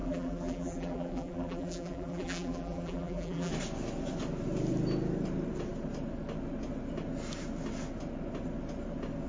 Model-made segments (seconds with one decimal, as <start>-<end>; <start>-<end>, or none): 0.0-3.5